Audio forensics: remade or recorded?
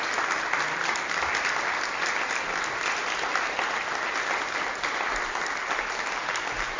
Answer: recorded